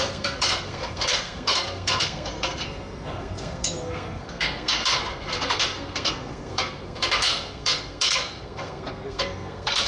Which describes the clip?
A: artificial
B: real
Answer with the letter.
A